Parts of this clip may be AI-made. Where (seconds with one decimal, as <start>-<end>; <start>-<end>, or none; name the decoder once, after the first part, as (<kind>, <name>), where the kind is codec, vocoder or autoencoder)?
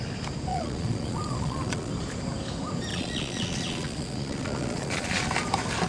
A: 0.5-1.9 (vocoder, Vocos); 2.9-5.3